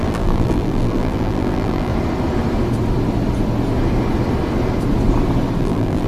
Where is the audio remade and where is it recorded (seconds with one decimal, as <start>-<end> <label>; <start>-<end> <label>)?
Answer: 0.0-1.9 remade; 1.9-5.6 recorded; 5.6-6.1 remade